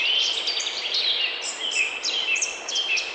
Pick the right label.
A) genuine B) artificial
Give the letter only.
A